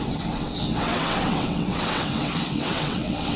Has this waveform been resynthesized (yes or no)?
yes